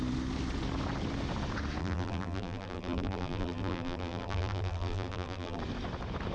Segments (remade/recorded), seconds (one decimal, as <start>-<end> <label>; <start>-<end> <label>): 0.0-1.8 recorded; 1.8-5.6 remade; 5.6-6.3 recorded